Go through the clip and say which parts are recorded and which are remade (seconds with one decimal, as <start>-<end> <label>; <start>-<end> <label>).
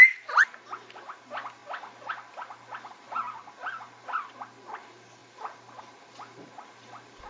0.0-7.3 recorded